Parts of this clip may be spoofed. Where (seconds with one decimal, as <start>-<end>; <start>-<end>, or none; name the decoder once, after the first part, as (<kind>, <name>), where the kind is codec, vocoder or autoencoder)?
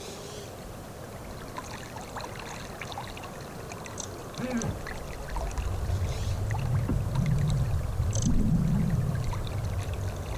4.2-5.0 (vocoder, BigVGAN v2); 6.9-9.5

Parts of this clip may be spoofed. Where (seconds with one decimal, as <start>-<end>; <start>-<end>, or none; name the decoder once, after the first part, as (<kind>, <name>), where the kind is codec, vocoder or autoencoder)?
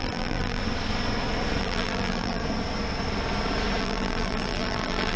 0.0-0.6 (vocoder, BigVGAN v2); 1.6-2.4; 3.8-5.2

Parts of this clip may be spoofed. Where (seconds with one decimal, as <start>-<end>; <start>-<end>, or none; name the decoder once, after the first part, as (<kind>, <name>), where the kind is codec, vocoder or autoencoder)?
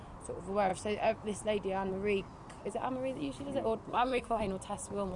3.9-4.4 (codec, SNAC)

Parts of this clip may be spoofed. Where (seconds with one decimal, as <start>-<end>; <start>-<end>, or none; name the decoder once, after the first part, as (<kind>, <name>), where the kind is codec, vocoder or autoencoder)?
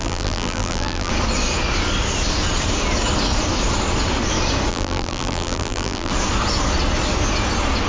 0.0-1.1 (vocoder, BigVGAN v2); 4.7-6.1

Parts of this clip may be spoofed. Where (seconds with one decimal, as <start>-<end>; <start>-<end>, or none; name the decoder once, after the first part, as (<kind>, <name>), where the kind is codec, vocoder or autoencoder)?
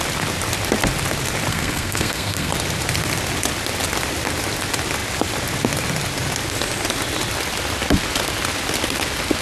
1.5-2.5 (codec, SNAC)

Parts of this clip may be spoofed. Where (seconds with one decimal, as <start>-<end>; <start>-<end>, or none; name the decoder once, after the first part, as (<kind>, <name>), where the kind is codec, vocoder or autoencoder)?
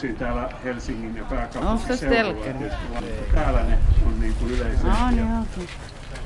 none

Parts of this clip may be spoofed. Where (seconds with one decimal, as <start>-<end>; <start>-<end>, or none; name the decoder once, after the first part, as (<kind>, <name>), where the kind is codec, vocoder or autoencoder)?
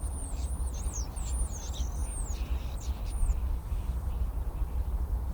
3.6-4.1 (autoencoder, DAC-VAE)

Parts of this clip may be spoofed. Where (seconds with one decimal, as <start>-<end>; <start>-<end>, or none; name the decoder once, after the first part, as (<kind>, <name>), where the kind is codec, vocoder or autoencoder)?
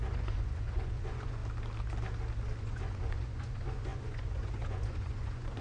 0.0-1.4 (vocoder, Vocos); 2.6-5.6